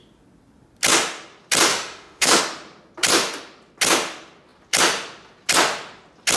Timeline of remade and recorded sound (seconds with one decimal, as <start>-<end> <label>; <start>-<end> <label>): 0.0-1.7 recorded; 1.7-2.4 remade; 2.4-6.4 recorded